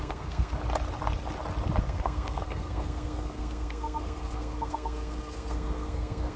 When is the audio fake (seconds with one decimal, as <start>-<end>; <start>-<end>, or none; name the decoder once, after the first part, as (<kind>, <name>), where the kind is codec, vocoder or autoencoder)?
0.0-0.6 (codec, SNAC); 1.8-6.4